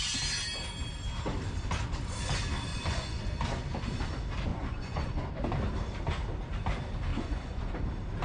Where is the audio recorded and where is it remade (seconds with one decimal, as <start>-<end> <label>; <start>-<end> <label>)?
0.0-2.7 recorded; 2.7-3.2 remade; 3.2-4.5 recorded; 4.5-5.3 remade; 5.3-7.1 recorded; 7.1-7.7 remade; 7.7-8.2 recorded